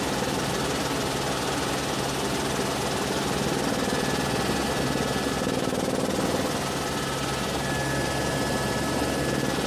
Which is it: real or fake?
real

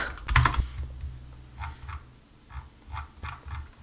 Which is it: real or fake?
real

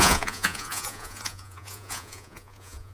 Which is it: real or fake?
fake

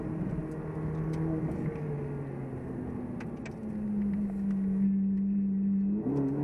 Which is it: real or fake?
real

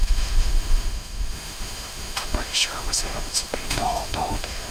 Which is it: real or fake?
fake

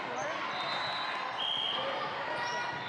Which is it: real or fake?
real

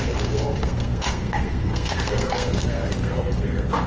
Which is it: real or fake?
fake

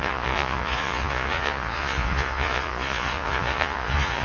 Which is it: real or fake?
fake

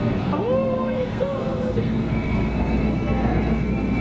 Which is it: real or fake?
fake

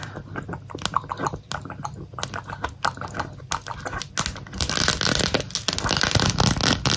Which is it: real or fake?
real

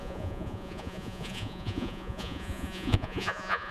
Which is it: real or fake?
fake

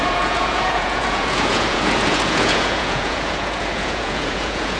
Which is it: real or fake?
fake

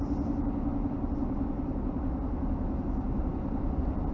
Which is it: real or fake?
real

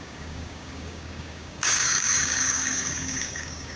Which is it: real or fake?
fake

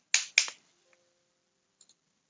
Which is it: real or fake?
real